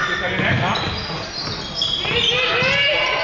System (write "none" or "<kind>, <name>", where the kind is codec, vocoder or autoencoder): none